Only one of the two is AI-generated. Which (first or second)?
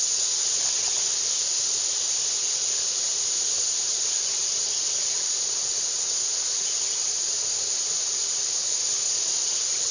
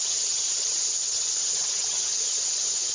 second